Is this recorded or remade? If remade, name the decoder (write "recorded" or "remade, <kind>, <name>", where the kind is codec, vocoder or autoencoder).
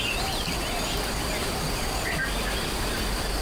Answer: recorded